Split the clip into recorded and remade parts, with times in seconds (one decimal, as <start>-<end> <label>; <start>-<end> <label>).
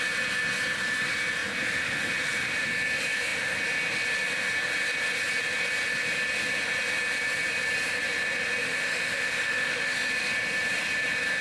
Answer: 0.0-8.6 recorded; 8.6-10.1 remade; 10.1-11.4 recorded